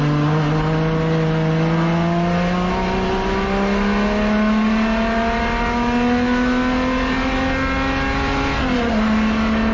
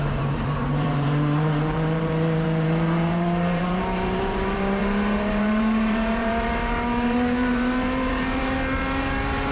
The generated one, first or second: second